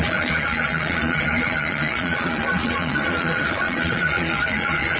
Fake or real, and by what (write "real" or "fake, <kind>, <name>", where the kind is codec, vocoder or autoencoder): fake, vocoder, Vocos